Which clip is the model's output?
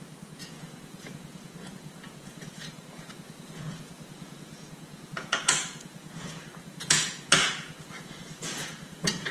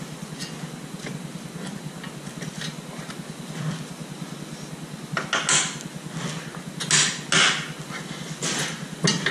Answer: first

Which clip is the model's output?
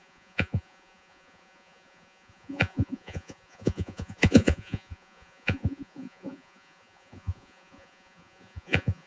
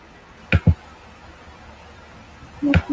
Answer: first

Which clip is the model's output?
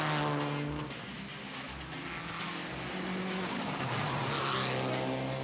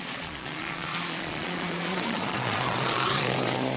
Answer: second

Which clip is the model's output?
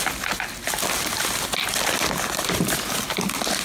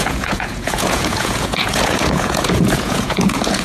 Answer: second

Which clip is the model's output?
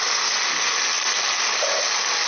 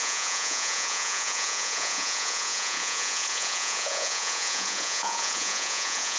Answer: second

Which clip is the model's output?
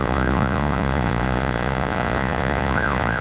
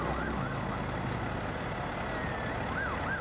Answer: first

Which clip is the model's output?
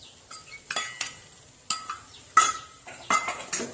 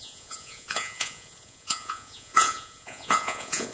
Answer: second